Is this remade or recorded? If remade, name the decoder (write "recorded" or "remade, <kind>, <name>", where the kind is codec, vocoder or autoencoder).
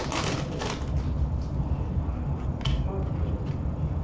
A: recorded